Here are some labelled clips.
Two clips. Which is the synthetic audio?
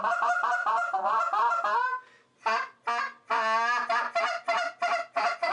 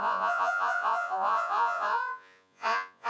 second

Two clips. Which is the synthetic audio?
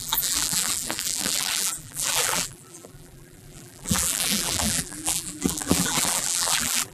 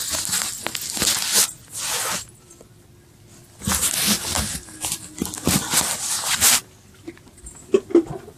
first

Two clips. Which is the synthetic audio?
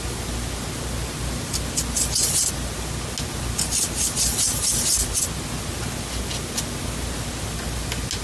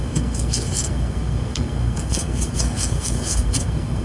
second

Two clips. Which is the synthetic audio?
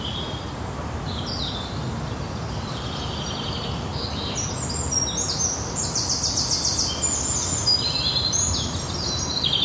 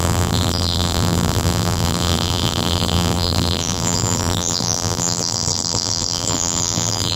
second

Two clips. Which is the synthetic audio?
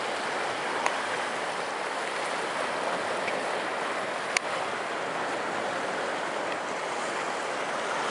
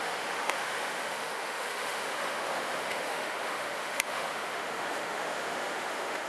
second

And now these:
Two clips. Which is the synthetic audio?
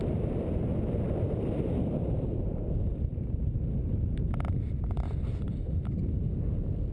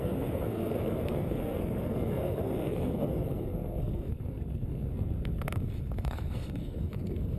second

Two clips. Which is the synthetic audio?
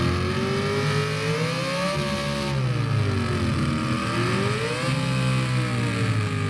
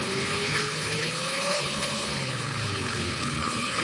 second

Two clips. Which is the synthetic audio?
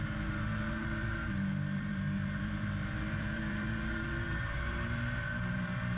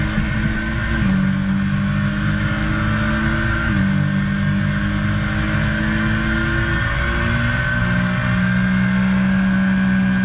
first